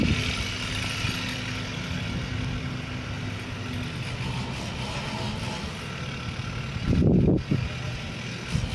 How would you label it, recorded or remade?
recorded